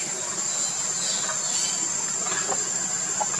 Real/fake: real